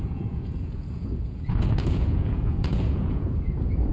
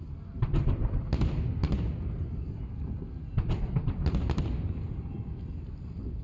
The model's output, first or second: first